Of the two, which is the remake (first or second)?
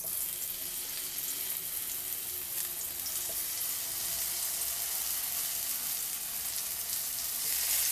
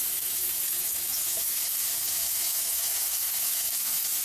second